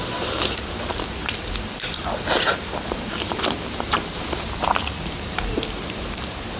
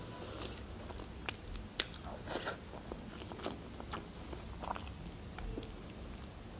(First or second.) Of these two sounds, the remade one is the first